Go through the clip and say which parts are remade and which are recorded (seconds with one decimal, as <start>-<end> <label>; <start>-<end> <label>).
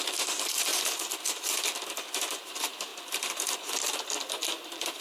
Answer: 0.0-0.7 remade; 0.7-2.3 recorded; 2.3-2.9 remade; 2.9-4.6 recorded; 4.6-5.0 remade